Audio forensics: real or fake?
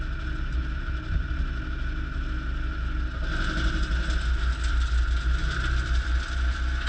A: real